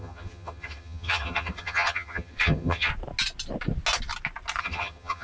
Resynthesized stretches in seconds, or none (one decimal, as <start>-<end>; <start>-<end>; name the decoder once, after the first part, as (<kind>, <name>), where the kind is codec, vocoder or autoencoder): 0.0-2.9 (vocoder, HiFi-GAN); 4.6-5.2